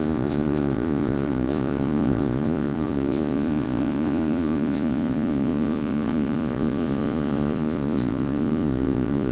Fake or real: fake